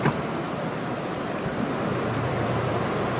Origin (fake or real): real